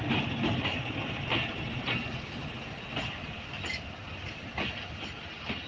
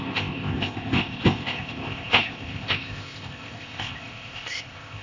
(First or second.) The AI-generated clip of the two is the second